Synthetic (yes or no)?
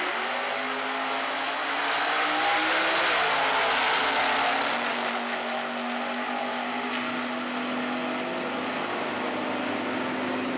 no